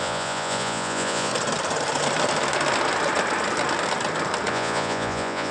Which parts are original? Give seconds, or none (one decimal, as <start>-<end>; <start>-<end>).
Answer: 1.3-4.5